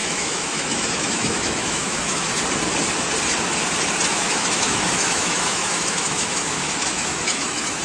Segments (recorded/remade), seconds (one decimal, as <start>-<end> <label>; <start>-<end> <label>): 0.0-2.4 remade; 2.4-4.1 recorded; 4.1-7.8 remade